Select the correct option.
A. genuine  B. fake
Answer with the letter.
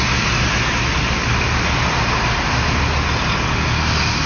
A